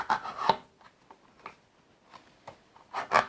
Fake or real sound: real